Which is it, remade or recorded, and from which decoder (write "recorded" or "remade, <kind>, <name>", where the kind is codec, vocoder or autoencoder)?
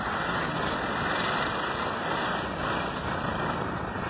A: recorded